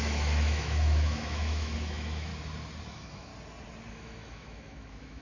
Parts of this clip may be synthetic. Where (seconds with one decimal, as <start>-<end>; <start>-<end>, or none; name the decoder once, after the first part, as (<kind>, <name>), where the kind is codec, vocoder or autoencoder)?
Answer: 0.0-2.3 (autoencoder, DAC-VAE); 2.9-3.3; 3.9-5.2